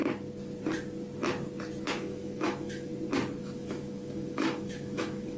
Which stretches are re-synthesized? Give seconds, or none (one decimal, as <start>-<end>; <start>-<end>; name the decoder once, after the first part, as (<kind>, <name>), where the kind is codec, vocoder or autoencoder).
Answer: 1.9-2.9 (autoencoder, DAC-VAE); 3.4-5.4